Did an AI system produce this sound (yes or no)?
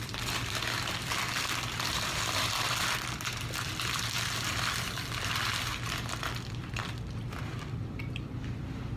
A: yes